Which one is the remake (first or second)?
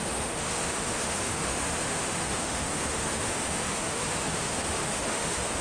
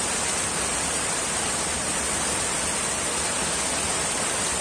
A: first